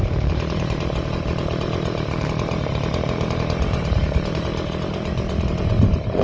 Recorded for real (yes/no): no